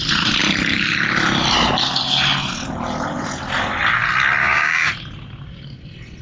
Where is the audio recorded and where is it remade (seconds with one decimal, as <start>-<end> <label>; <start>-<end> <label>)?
0.0-4.4 recorded; 4.4-4.9 remade; 4.9-6.2 recorded